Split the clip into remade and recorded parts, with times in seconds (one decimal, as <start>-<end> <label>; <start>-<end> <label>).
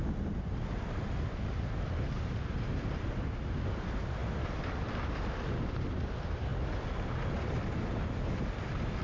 0.0-9.0 recorded